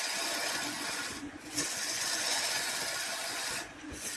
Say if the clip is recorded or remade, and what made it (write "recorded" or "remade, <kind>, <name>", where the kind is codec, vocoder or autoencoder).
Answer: remade, vocoder, Vocos